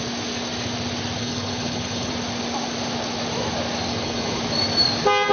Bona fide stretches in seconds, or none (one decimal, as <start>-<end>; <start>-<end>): 0.0-1.2; 2.1-3.9; 4.4-5.3